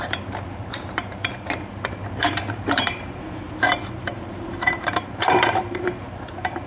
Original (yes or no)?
no